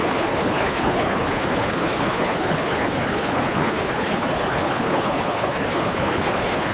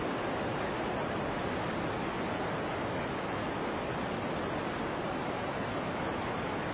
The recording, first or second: second